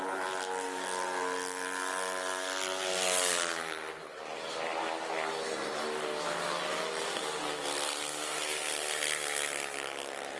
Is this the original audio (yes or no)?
yes